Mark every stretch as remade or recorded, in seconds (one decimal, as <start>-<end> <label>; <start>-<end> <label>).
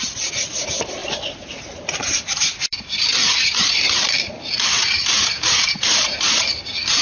0.0-1.0 recorded; 1.0-4.0 remade; 4.0-4.8 recorded; 4.8-6.3 remade; 6.3-7.0 recorded